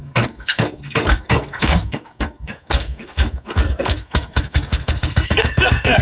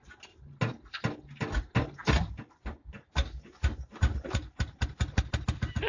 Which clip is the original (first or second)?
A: second